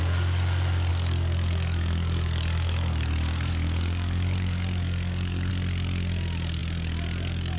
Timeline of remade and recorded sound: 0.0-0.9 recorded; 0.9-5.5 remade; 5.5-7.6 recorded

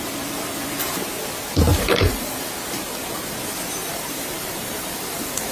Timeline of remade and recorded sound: 0.0-1.7 recorded; 1.7-2.5 remade; 2.5-3.8 recorded; 3.8-5.5 remade

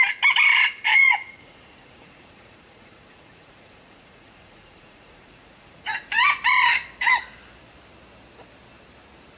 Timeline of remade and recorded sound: 0.0-0.9 recorded; 0.9-6.1 remade; 6.1-9.4 recorded

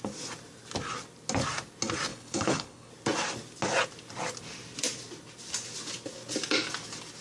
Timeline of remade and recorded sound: 0.0-2.1 recorded; 2.1-2.9 remade; 2.9-7.2 recorded

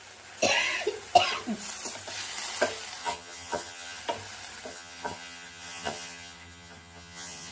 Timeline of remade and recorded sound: 0.0-3.0 recorded; 3.0-4.0 remade; 4.0-4.7 recorded; 4.7-7.5 remade

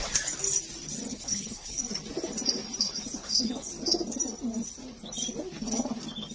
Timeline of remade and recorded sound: 0.0-1.1 recorded; 1.1-1.8 remade; 1.8-3.2 recorded; 3.2-3.7 remade; 3.7-6.3 recorded